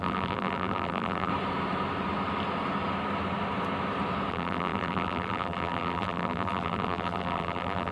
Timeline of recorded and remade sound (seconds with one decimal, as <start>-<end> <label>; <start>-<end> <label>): 0.0-1.3 remade; 1.3-4.3 recorded; 4.3-7.9 remade